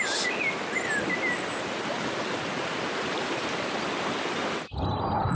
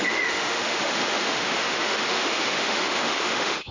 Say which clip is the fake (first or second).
second